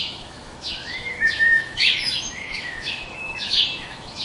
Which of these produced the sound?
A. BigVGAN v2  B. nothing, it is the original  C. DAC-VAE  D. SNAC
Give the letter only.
C